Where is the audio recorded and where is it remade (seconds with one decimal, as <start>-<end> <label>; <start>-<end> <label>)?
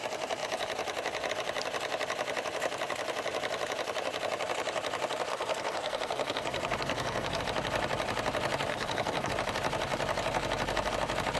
0.0-5.3 recorded; 5.3-7.4 remade; 7.4-8.7 recorded; 8.7-9.3 remade; 9.3-11.4 recorded